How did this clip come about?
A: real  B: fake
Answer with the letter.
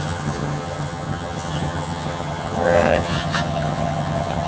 B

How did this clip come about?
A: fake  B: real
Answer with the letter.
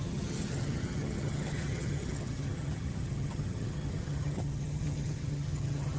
A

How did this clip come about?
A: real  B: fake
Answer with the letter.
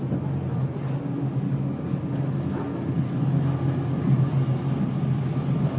A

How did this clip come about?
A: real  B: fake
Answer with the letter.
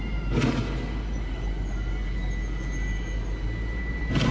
A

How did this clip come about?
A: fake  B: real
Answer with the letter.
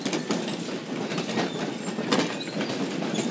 B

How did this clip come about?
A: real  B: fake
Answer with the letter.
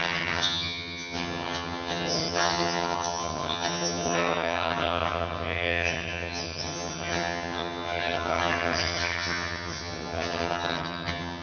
B